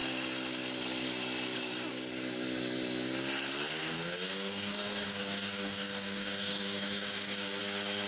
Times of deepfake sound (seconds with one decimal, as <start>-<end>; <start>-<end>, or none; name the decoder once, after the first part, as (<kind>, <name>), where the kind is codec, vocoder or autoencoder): 3.8-7.6 (codec, DAC)

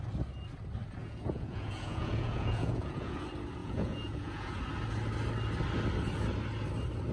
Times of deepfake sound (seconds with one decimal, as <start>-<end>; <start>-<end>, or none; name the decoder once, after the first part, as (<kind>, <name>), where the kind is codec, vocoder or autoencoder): 1.0-3.2 (vocoder, Vocos); 3.6-4.6

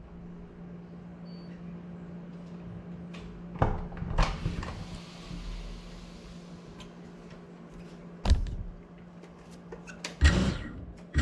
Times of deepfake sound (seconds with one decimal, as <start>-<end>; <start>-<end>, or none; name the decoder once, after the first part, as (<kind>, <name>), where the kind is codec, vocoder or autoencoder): none

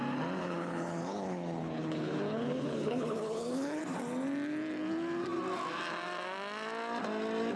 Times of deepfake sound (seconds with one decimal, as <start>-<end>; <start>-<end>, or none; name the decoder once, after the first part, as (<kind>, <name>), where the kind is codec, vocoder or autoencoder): 0.4-3.8 (codec, HILCodec)

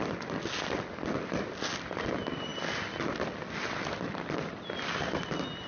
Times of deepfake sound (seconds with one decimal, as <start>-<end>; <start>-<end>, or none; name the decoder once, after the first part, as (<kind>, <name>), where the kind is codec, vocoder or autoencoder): none

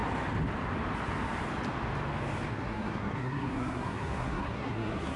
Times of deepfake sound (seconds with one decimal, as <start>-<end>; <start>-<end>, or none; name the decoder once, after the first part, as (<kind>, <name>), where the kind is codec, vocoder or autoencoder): 2.5-5.2 (codec, SNAC)

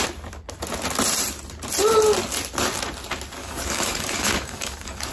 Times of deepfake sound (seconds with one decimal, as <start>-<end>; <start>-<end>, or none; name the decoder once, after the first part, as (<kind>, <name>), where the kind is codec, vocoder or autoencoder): 3.4-5.1 (codec, DAC)